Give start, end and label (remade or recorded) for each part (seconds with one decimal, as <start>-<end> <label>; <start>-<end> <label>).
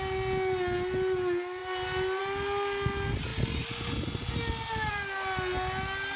0.0-6.2 recorded